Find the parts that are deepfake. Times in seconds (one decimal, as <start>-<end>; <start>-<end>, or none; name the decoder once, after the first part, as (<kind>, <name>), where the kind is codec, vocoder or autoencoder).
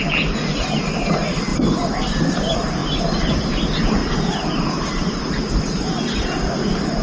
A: none